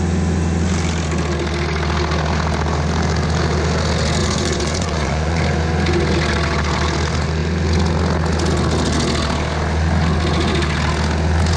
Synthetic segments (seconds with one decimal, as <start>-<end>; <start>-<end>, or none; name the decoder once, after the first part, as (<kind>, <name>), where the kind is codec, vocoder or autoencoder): 4.2-5.4 (vocoder, Vocos)